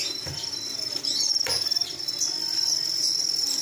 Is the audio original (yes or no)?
yes